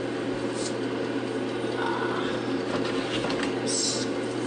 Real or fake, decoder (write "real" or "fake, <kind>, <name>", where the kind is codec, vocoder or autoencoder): real